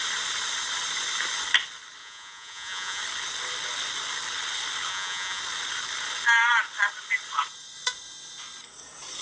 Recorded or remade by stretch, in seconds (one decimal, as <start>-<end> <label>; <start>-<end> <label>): 0.0-2.0 recorded; 2.0-3.0 remade; 3.0-4.9 recorded; 4.9-5.4 remade; 5.4-9.2 recorded